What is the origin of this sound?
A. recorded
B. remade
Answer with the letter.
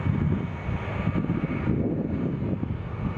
A